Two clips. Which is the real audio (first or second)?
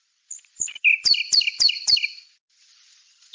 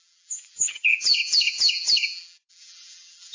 first